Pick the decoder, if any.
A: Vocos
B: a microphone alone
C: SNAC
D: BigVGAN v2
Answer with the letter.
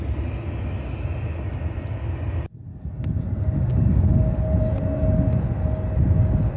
B